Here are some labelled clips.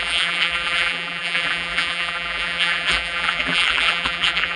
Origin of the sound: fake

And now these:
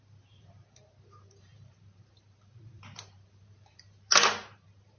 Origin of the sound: fake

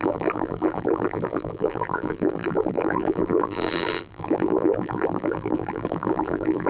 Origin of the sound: fake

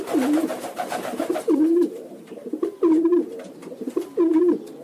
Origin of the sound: fake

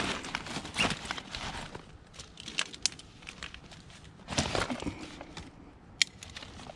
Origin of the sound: real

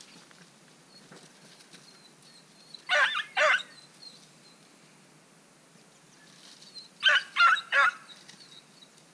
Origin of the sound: real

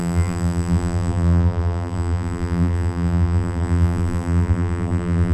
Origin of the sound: fake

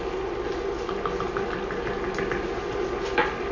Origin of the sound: real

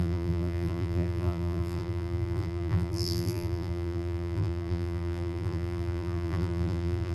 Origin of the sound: fake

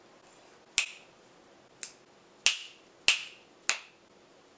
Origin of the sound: real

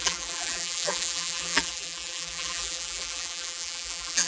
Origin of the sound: fake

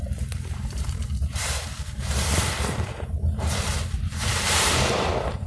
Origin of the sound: fake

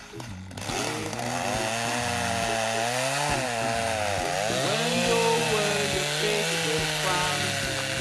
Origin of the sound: real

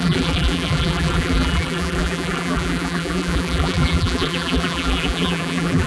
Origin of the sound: fake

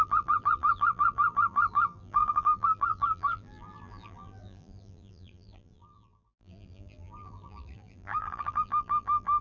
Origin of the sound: fake